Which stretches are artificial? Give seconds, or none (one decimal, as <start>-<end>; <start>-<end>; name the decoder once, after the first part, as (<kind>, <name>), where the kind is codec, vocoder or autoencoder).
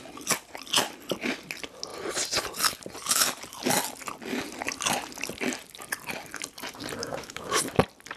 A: 7.0-7.6 (autoencoder, DAC-VAE)